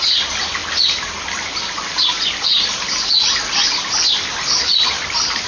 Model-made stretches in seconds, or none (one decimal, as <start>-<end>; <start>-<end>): none